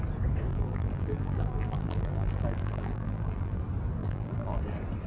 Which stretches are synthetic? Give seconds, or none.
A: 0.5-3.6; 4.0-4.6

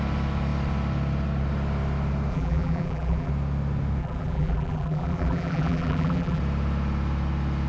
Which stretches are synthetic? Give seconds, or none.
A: 2.3-3.3; 4.0-6.4

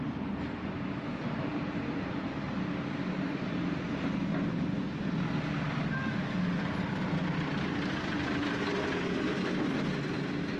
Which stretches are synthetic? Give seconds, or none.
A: 1.5-4.7

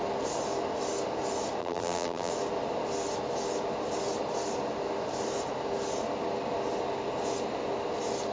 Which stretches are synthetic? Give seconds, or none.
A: 1.6-2.3